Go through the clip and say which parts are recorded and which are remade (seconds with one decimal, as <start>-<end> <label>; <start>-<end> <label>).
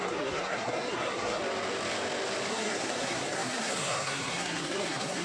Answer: 0.0-1.4 remade; 1.4-2.5 recorded; 2.5-5.2 remade